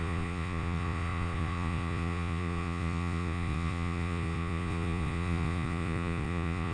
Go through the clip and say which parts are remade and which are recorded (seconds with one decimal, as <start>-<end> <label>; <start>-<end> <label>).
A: 0.0-6.7 remade